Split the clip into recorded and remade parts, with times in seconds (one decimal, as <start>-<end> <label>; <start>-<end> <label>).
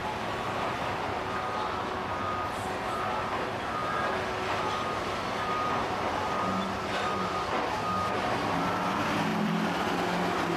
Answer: 0.0-0.7 remade; 0.7-9.3 recorded; 9.3-9.9 remade; 9.9-10.6 recorded